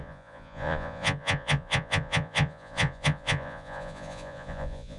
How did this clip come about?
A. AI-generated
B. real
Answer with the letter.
A